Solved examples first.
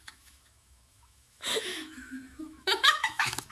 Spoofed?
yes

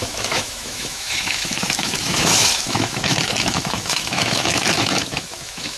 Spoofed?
yes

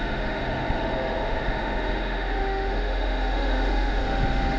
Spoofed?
yes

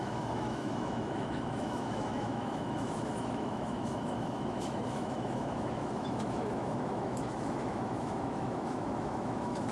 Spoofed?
yes